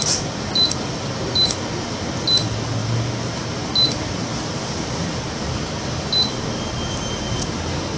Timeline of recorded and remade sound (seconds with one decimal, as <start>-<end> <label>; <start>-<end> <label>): 0.0-8.0 recorded